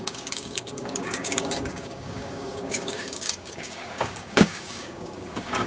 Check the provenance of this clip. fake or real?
fake